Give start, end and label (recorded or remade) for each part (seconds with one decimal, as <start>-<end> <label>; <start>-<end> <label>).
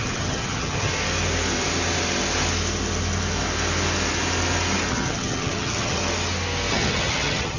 0.0-0.9 remade; 0.9-4.9 recorded; 4.9-6.0 remade; 6.0-6.7 recorded; 6.7-7.6 remade